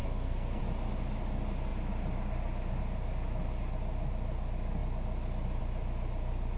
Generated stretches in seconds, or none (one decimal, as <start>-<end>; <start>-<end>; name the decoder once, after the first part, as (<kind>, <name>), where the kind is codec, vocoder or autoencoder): 0.0-0.6 (codec, SNAC)